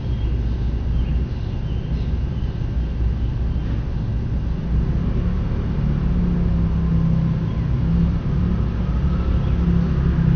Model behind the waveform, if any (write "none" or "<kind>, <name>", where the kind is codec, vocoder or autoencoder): none